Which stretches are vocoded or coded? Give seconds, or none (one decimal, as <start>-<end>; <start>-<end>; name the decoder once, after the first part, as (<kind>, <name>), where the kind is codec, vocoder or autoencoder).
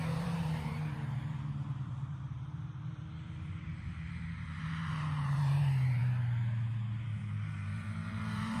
0.0-6.0 (vocoder, BigVGAN v2); 7.0-8.6